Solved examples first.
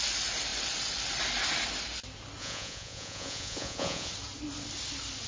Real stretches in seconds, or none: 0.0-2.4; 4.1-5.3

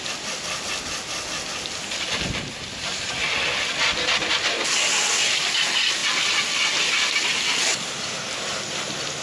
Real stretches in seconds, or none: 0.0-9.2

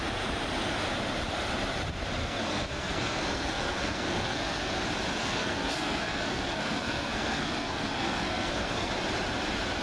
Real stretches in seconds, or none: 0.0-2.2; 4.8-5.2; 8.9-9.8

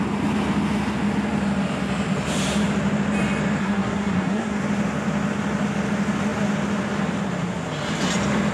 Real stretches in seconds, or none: 0.0-3.6; 4.6-8.5

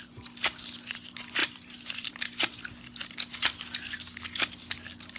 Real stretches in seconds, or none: 0.0-1.4; 2.1-5.2

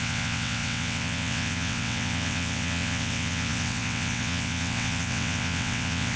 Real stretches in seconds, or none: none

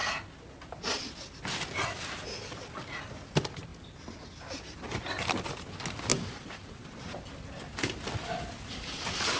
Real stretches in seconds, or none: 0.0-9.4